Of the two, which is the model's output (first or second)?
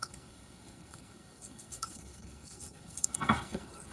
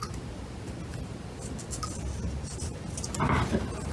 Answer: first